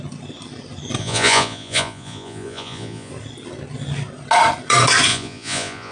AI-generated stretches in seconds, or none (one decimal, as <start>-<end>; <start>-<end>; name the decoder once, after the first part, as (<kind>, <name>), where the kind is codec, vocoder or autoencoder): 1.0-3.1 (vocoder, Vocos); 5.1-5.9